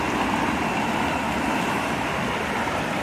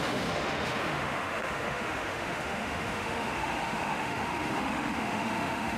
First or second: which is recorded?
first